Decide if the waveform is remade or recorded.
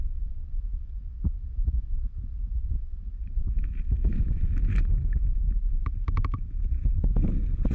recorded